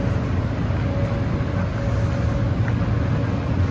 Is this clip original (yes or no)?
yes